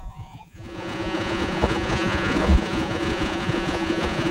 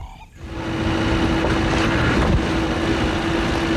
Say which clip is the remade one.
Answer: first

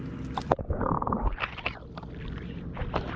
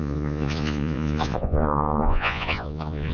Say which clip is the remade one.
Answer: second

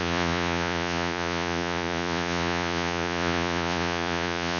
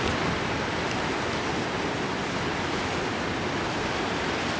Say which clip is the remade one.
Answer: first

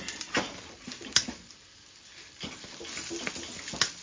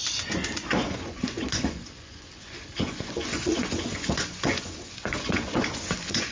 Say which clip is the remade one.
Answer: second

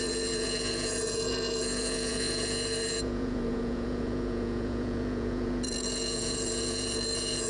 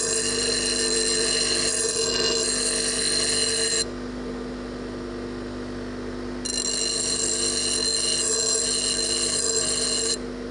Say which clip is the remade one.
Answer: first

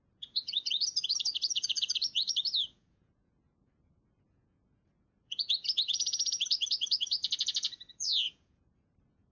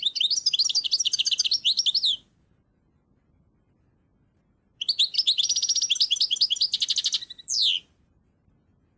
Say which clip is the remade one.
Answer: first